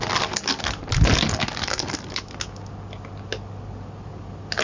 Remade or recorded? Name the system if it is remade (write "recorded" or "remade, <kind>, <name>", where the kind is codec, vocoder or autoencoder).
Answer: recorded